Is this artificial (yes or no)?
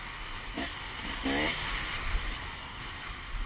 no